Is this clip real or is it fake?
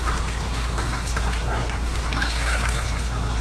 fake